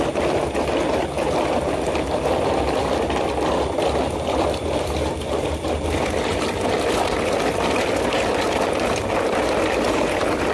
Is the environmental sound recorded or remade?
recorded